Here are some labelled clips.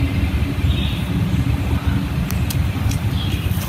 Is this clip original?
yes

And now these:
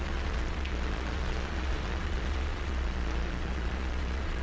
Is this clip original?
no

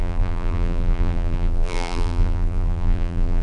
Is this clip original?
no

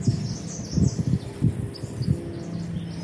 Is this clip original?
yes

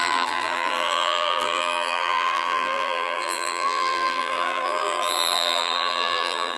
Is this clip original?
no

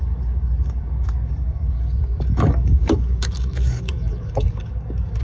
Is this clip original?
no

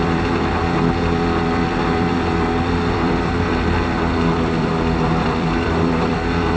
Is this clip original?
no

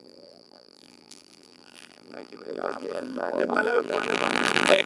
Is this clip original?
no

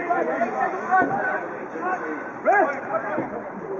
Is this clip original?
no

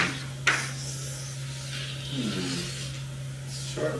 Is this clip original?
yes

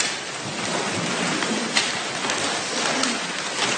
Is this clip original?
yes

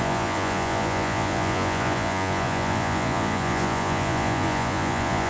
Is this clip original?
no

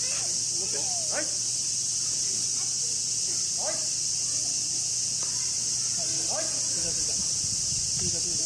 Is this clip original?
yes